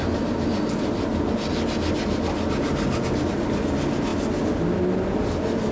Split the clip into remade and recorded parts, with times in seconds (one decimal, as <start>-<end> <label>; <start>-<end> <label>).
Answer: 0.0-5.7 recorded